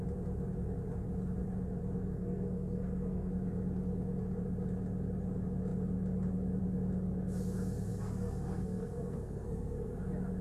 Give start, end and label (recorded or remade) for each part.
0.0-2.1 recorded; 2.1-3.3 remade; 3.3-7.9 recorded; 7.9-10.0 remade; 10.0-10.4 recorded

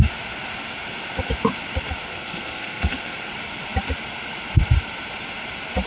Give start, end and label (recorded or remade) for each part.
0.0-2.1 recorded; 2.1-3.3 remade; 3.3-5.9 recorded

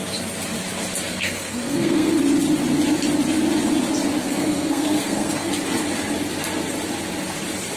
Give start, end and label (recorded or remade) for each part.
0.0-1.1 recorded; 1.1-2.1 remade; 2.1-4.2 recorded; 4.2-5.5 remade; 5.5-7.8 recorded

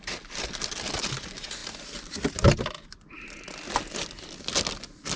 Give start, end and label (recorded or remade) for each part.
0.0-5.2 recorded